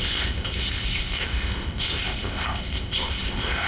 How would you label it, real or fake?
fake